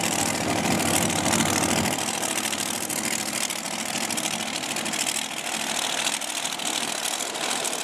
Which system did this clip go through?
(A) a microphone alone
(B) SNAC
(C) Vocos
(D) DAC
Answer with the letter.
A